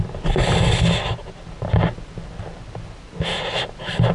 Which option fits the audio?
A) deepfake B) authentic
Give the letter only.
B